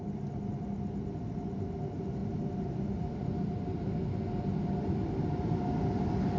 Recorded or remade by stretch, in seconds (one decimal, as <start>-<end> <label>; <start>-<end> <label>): 0.0-6.4 recorded